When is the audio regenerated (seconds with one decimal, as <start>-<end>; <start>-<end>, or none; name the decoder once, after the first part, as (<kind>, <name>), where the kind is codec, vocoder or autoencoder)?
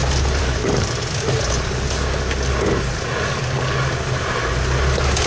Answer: 0.0-0.7 (vocoder, BigVGAN v2)